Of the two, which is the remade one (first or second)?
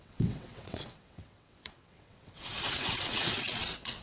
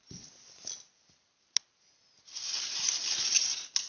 first